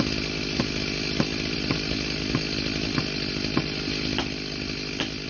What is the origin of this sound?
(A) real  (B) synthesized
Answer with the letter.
A